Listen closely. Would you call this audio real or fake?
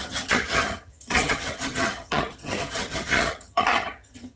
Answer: fake